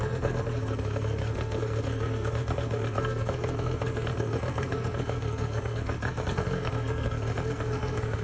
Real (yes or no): no